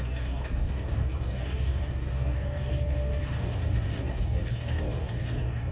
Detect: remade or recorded remade